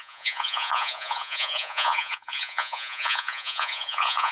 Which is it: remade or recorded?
remade